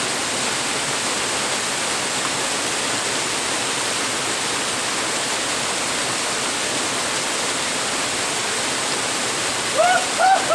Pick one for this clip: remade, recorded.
recorded